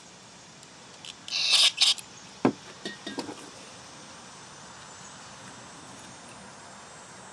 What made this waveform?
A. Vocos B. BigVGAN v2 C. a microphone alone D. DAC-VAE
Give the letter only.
C